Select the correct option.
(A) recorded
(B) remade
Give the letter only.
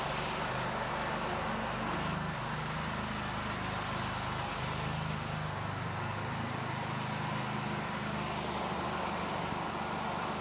A